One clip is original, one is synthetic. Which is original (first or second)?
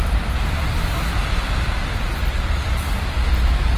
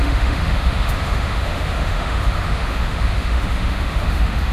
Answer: first